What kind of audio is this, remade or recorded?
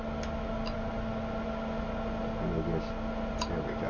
recorded